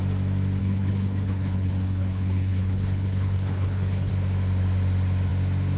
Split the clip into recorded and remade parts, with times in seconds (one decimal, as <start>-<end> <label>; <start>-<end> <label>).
0.0-0.6 recorded; 0.6-4.1 remade; 4.1-5.8 recorded